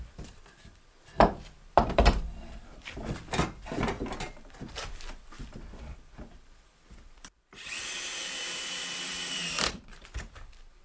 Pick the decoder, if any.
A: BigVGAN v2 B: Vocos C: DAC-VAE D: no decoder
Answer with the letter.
A